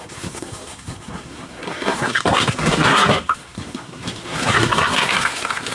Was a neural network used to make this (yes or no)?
yes